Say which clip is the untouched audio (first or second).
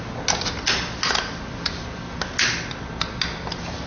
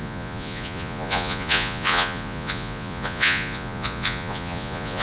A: first